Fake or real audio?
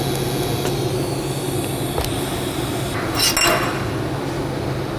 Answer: real